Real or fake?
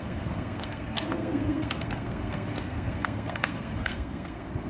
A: fake